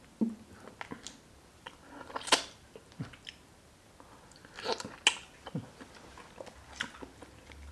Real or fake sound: real